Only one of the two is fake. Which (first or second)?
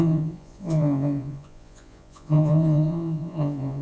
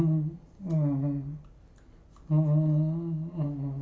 first